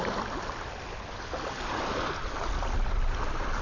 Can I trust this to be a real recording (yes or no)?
yes